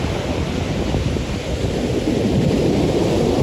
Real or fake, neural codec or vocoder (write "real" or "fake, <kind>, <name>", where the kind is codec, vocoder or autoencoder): real